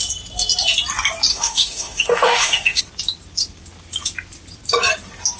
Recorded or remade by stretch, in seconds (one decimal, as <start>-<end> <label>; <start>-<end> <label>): 0.0-1.3 recorded; 1.3-2.8 remade; 2.8-5.4 recorded